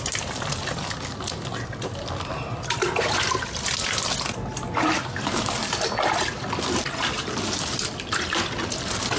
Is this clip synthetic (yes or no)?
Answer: no